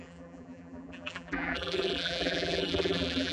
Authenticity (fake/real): fake